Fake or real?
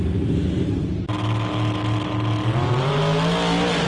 real